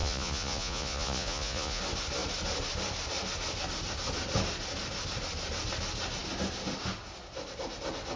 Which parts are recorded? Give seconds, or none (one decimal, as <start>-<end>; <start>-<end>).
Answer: 1.8-8.2